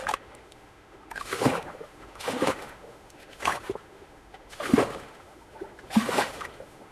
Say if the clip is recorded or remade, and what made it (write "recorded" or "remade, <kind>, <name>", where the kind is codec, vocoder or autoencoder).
remade, autoencoder, DAC-VAE